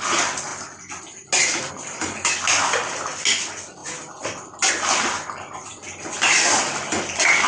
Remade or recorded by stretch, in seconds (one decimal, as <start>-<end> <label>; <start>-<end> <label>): 0.0-7.5 recorded